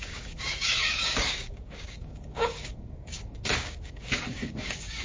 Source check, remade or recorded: remade